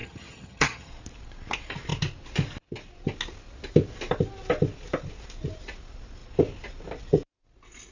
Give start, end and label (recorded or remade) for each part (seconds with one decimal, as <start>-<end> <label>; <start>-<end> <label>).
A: 0.0-0.9 remade; 0.9-7.9 recorded